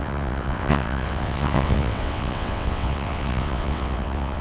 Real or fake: fake